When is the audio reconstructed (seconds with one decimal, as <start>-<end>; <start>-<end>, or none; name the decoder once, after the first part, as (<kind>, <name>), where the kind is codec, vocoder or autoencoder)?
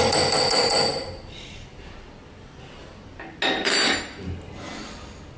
none